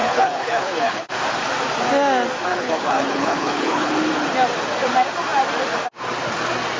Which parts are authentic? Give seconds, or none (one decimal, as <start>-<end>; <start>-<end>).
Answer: 1.1-2.5; 3.9-6.8